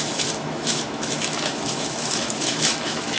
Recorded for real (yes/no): no